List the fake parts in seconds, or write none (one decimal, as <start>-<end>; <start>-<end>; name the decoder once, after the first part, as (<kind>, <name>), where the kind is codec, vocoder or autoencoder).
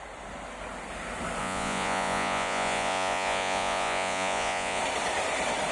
1.4-4.8 (vocoder, Vocos)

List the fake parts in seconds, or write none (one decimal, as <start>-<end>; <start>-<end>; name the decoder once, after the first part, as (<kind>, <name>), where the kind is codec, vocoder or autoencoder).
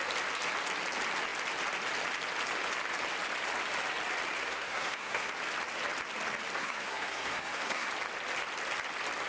4.4-5.3 (codec, SNAC); 6.6-7.9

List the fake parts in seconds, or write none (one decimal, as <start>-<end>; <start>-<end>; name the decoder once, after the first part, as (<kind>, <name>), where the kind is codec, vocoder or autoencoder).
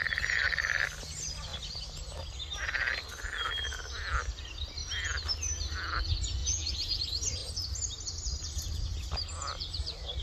6.4-7.0 (vocoder, Vocos)